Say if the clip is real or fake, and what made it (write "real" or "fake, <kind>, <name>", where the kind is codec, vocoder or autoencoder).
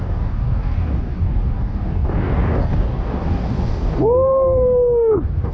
fake, codec, DAC